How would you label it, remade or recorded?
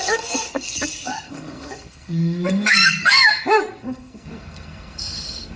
remade